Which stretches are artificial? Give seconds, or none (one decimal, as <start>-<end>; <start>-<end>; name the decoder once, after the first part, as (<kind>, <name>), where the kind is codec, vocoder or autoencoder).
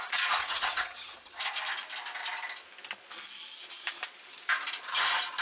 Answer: 0.4-1.4 (vocoder, HiFi-GAN)